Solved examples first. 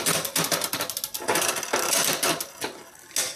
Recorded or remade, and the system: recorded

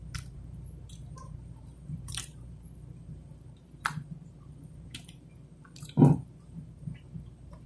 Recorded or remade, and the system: remade, vocoder, BigVGAN v2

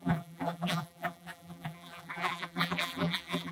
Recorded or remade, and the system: remade, vocoder, BigVGAN v2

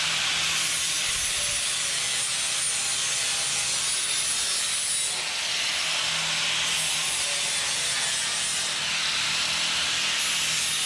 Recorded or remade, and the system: recorded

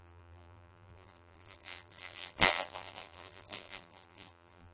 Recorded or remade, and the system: remade, vocoder, BigVGAN v2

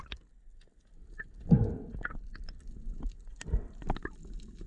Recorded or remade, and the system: recorded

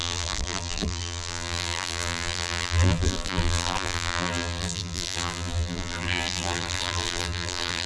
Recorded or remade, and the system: remade, vocoder, BigVGAN v2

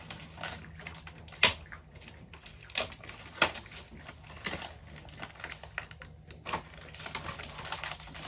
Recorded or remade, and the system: recorded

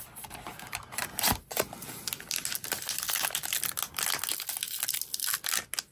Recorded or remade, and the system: recorded